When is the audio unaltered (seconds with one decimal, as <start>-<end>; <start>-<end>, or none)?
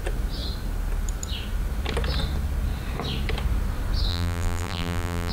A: 0.0-4.1